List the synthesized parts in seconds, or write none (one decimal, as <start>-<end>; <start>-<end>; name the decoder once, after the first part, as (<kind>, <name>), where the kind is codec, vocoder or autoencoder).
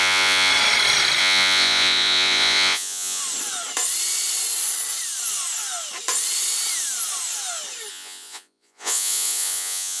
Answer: 0.0-0.5 (vocoder, Vocos); 1.2-3.2; 7.9-10.0